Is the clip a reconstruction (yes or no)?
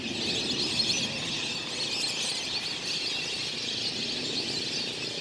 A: no